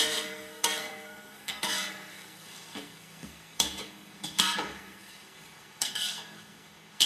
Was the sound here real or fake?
fake